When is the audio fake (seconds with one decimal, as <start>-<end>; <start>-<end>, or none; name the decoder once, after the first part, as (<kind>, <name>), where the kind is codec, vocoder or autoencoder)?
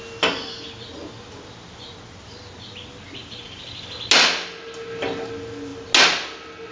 none